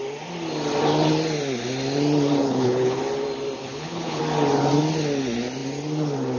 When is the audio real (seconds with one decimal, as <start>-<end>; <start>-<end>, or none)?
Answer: 0.0-2.4; 3.0-3.6; 4.2-6.4